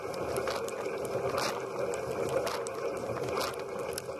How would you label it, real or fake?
real